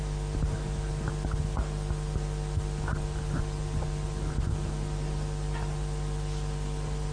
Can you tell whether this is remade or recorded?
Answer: recorded